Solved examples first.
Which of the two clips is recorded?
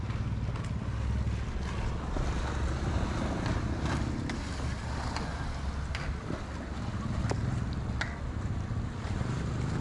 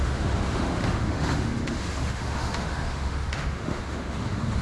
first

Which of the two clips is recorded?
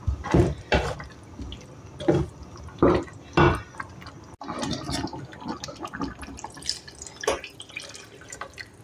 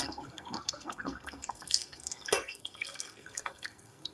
first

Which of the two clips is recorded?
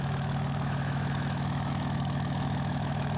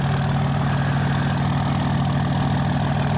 second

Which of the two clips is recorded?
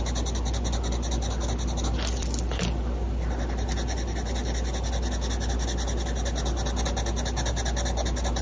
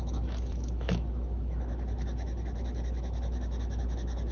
first